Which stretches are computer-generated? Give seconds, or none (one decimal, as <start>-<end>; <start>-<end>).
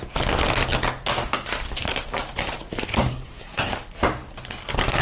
3.1-3.7